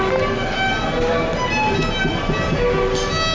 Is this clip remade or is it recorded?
recorded